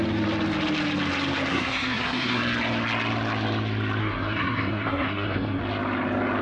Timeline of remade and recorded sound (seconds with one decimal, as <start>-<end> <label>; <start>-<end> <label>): 0.0-1.5 recorded; 1.5-2.4 remade; 2.4-4.0 recorded; 4.0-5.6 remade; 5.6-6.4 recorded